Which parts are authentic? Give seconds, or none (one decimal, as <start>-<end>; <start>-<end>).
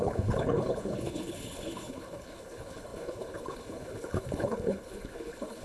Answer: none